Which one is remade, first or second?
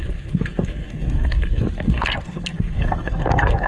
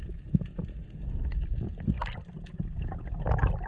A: first